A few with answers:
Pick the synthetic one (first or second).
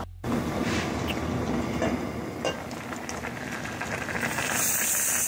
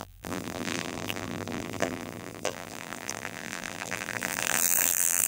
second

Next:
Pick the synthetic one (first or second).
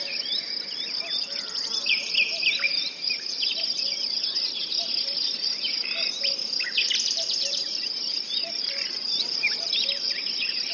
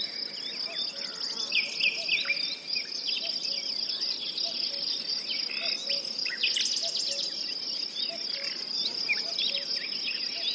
first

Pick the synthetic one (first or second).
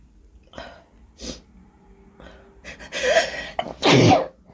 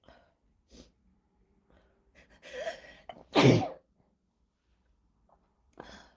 second